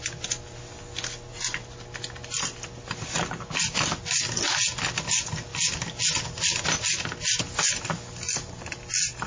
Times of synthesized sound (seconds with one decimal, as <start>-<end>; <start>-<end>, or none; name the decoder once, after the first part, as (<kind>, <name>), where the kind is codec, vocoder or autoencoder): none